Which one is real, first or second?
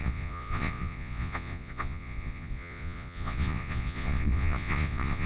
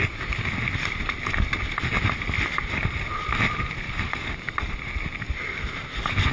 second